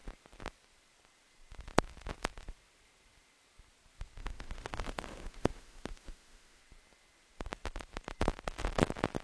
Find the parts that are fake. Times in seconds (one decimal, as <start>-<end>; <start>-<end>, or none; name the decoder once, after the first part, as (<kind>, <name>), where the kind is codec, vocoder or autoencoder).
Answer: 4.2-6.6 (autoencoder, DAC-VAE)